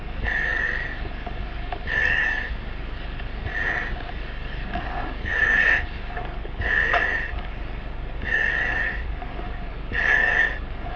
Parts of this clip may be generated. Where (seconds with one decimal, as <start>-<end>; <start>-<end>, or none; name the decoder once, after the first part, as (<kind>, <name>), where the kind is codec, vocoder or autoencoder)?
0.0-3.5 (codec, DAC); 4.1-11.0